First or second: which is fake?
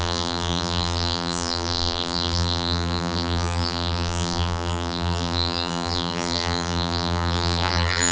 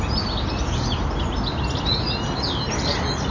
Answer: first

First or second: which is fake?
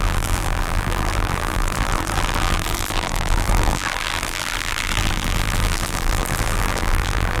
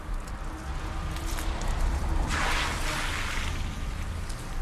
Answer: first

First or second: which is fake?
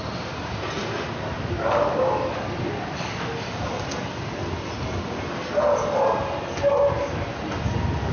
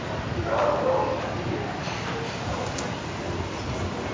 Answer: second